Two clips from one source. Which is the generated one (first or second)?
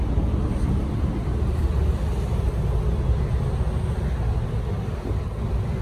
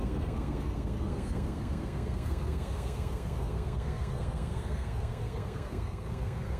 second